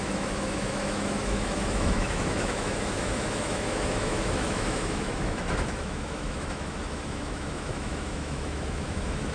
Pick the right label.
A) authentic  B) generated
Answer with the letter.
B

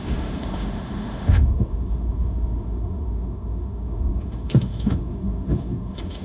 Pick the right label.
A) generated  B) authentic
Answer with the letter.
A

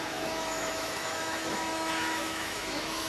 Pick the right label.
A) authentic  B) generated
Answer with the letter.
B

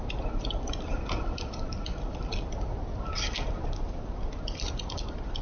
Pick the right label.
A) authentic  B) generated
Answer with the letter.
A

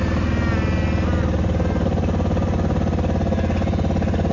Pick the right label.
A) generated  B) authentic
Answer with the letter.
B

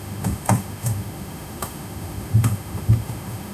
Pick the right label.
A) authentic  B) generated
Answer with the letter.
B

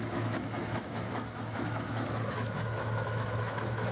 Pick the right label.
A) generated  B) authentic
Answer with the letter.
A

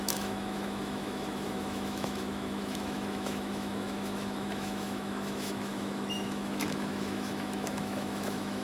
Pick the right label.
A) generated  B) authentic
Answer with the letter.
A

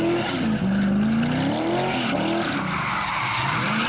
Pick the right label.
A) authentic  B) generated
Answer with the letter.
A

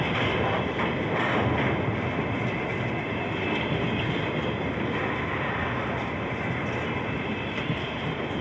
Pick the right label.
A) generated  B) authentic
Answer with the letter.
B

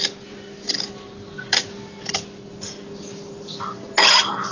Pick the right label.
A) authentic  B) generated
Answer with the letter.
A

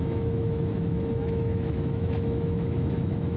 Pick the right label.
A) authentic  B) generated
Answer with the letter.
B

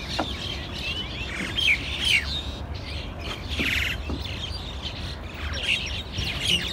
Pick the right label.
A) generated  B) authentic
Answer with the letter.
B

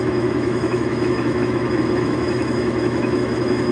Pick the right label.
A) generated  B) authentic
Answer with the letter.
A